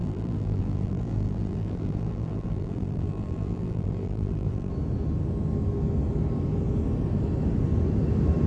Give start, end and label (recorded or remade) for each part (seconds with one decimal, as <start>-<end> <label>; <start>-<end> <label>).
0.0-4.7 remade; 4.7-8.5 recorded

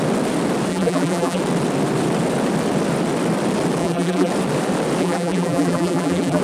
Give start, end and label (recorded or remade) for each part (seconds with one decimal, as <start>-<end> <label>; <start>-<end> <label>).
0.0-0.7 recorded; 0.7-1.4 remade; 1.4-3.8 recorded; 3.8-4.3 remade; 4.3-5.0 recorded; 5.0-6.4 remade

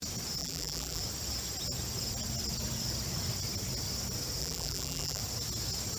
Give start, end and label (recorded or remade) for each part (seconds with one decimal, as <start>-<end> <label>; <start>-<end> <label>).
0.0-0.4 recorded; 0.4-1.0 remade; 1.0-4.4 recorded; 4.4-5.2 remade; 5.2-6.0 recorded

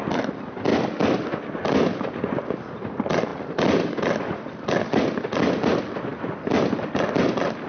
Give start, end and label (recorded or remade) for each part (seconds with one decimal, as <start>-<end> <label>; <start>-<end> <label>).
0.0-6.1 recorded; 6.1-7.2 remade; 7.2-7.7 recorded

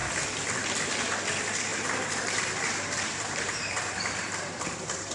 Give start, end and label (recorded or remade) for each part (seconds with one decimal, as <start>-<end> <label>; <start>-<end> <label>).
0.0-1.7 recorded; 1.7-5.1 remade

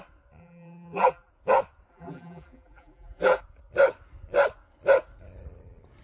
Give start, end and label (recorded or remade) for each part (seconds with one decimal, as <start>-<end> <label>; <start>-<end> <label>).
0.0-0.4 recorded; 0.4-1.3 remade; 1.3-1.9 recorded; 1.9-3.4 remade; 3.4-6.0 recorded